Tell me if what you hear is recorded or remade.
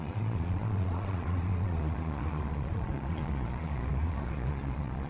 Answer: remade